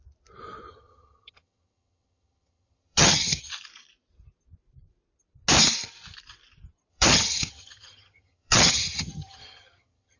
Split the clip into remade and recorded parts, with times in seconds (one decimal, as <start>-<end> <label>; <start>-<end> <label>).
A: 0.0-0.7 recorded; 0.7-3.5 remade; 3.5-6.9 recorded; 6.9-10.2 remade